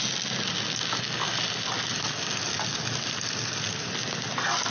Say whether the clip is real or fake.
real